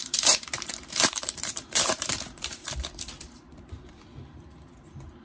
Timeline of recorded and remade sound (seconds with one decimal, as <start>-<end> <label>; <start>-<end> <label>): 0.0-2.9 remade; 2.9-5.2 recorded